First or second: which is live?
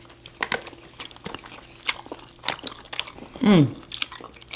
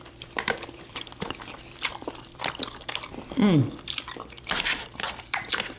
first